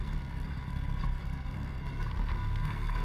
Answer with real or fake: fake